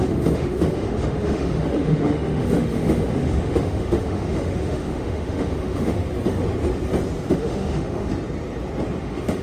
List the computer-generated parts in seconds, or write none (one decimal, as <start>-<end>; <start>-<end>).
0.0-6.0; 7.3-8.1; 9.0-9.4